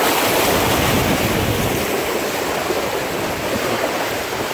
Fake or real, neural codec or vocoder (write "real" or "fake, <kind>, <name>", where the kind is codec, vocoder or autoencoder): real